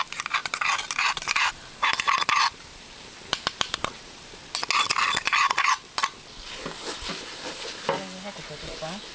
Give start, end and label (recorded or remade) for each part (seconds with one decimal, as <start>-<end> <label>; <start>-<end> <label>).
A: 0.0-0.4 recorded; 0.4-4.4 remade; 4.4-9.1 recorded

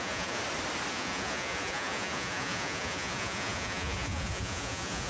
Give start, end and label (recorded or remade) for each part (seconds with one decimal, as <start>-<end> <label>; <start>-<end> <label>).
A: 0.0-0.4 remade; 0.4-0.9 recorded; 0.9-5.1 remade